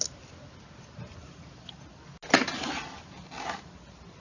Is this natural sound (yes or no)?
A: yes